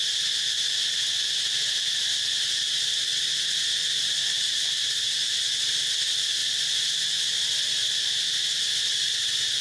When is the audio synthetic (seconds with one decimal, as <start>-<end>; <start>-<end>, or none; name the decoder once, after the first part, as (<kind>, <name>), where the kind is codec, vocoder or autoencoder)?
1.9-9.6 (vocoder, BigVGAN v2)